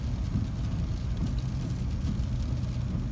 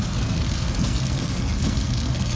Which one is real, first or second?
first